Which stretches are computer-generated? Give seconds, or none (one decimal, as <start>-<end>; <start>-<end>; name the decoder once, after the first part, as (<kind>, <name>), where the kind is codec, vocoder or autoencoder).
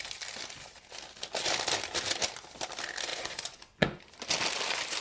3.1-4.0 (vocoder, Vocos)